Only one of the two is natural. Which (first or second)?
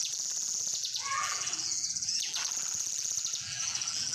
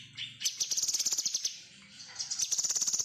second